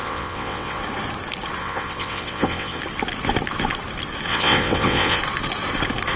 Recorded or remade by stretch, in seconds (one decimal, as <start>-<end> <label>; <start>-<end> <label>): 0.0-0.8 remade; 0.8-1.6 recorded; 1.6-2.8 remade; 2.8-4.3 recorded; 4.3-5.2 remade; 5.2-6.2 recorded